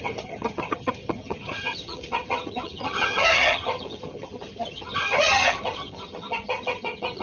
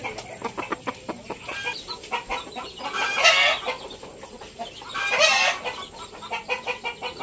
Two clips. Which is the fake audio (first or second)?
first